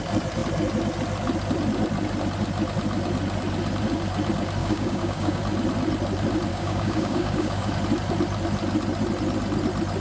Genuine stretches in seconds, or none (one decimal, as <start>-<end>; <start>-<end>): 0.0-4.6; 5.4-6.5; 7.7-10.0